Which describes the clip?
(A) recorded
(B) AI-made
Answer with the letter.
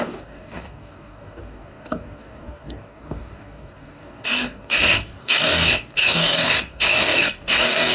B